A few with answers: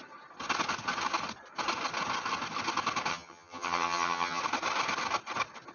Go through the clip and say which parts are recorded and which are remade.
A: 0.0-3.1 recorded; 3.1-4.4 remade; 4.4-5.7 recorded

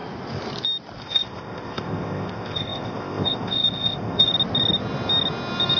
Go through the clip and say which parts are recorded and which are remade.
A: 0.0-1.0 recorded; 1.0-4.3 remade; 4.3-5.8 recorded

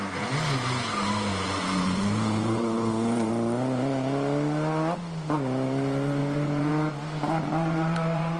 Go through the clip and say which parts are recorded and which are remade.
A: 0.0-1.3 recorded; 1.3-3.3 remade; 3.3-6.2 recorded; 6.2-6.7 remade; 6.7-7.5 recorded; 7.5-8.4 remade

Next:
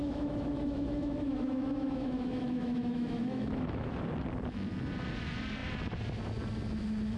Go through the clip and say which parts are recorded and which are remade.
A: 0.0-3.9 remade; 3.9-7.2 recorded

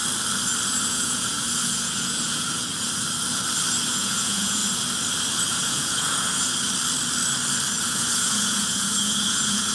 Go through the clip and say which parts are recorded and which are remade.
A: 0.0-0.9 recorded; 0.9-2.7 remade; 2.7-3.9 recorded; 3.9-4.6 remade; 4.6-5.5 recorded; 5.5-6.6 remade; 6.6-7.8 recorded; 7.8-9.7 remade

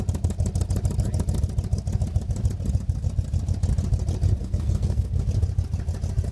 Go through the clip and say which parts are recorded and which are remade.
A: 0.0-4.4 recorded; 4.4-5.1 remade; 5.1-6.3 recorded

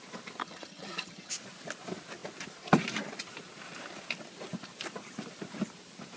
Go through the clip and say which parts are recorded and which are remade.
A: 0.0-0.4 recorded; 0.4-1.3 remade; 1.3-6.2 recorded